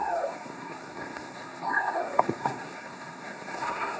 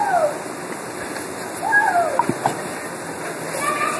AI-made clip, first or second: first